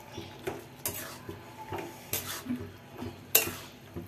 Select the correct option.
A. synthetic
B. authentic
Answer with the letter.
B